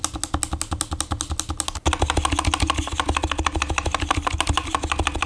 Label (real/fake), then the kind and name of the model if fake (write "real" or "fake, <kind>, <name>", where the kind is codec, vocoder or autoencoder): real